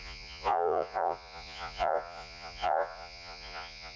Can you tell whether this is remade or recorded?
remade